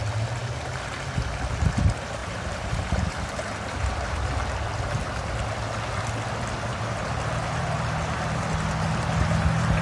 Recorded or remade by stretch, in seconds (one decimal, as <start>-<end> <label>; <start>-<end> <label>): 0.0-2.2 recorded; 2.2-4.3 remade; 4.3-6.7 recorded; 6.7-8.0 remade; 8.0-9.8 recorded